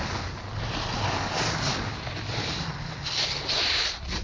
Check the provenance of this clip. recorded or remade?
recorded